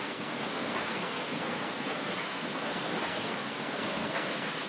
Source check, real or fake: fake